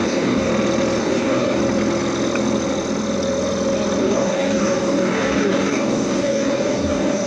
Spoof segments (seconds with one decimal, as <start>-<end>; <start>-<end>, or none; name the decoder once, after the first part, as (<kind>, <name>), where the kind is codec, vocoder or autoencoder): 0.0-0.5 (codec, DAC); 1.0-1.6; 4.0-7.3